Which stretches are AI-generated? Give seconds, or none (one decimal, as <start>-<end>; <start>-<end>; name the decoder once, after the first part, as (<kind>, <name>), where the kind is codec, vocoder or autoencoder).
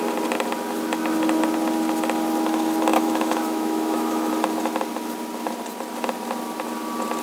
2.9-4.3 (autoencoder, DAC-VAE)